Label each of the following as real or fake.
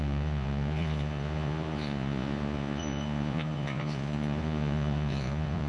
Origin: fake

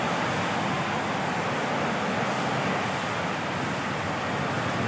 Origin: real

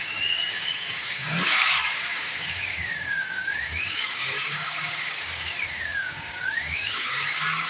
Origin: fake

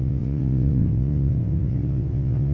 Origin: fake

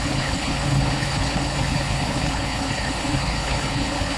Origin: fake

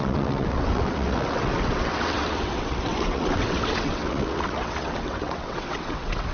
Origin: fake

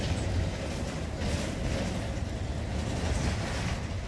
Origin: real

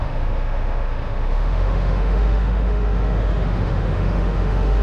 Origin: fake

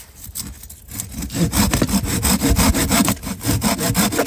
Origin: real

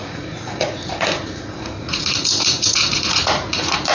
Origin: fake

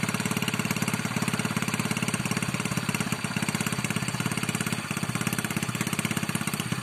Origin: real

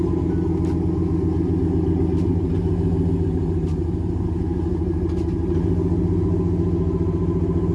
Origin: real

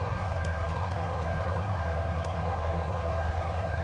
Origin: fake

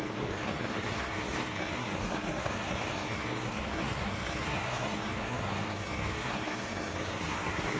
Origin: fake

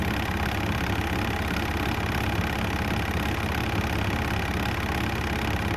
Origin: real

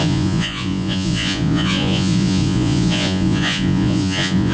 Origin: fake